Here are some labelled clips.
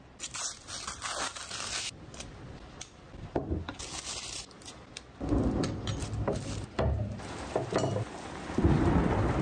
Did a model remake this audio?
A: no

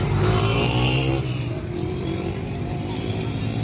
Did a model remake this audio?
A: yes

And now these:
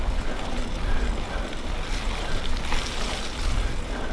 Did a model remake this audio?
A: no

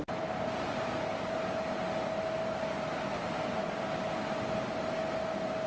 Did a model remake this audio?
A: no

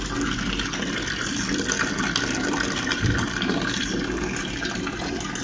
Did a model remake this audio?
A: no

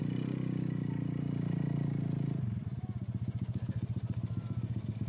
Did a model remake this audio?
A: no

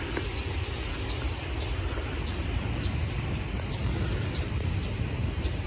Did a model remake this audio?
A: no